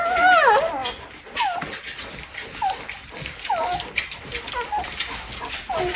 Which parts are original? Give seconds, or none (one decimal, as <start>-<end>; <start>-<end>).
0.0-6.0